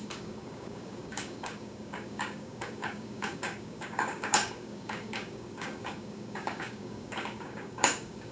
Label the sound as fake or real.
fake